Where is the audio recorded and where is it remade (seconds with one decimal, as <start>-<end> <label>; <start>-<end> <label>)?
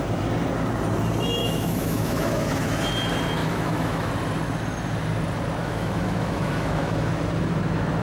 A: 0.0-1.4 recorded; 1.4-2.8 remade; 2.8-3.4 recorded; 3.4-4.1 remade; 4.1-5.6 recorded; 5.6-7.1 remade; 7.1-8.0 recorded